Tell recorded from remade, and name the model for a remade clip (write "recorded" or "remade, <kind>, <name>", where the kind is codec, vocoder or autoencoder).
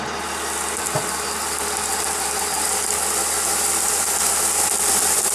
recorded